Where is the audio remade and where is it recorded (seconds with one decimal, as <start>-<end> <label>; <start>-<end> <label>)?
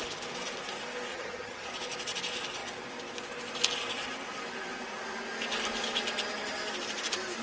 0.0-1.1 recorded; 1.1-1.7 remade; 1.7-7.4 recorded